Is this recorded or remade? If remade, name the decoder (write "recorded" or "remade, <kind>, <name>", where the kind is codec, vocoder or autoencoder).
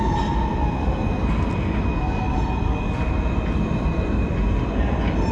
recorded